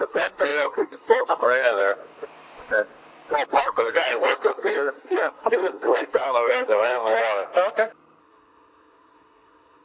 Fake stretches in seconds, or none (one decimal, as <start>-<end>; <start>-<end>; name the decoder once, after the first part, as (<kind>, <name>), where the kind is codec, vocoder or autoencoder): 0.0-1.8 (codec, SNAC); 3.6-7.2; 8.2-9.8